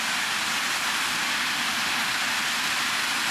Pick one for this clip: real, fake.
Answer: real